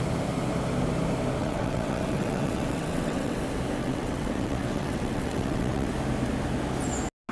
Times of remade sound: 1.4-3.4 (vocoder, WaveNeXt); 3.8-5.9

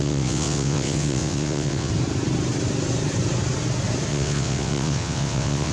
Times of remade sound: 0.0-1.9 (vocoder, WaveNeXt); 4.1-5.7

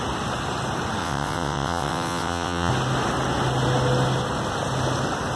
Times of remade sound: 1.0-2.7 (vocoder, WaveNeXt)

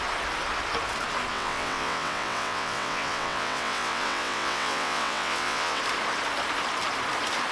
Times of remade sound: 1.3-5.8 (vocoder, WaveNeXt)

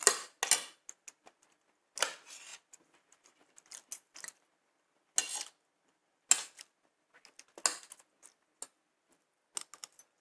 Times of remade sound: none

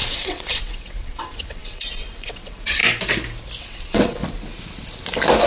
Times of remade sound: 0.0-2.8 (vocoder, WaveNeXt); 3.6-4.2

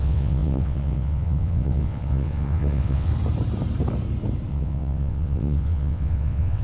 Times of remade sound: 0.0-3.1 (vocoder, WaveNeXt); 4.5-6.6